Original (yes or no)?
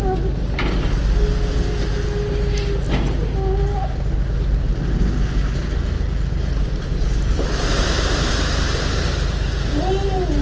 yes